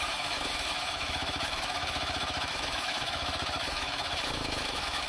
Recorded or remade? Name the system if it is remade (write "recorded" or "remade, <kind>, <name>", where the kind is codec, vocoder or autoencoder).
remade, autoencoder, DAC-VAE